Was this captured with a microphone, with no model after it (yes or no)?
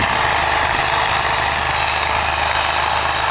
yes